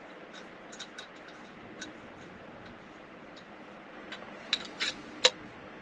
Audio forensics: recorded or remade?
recorded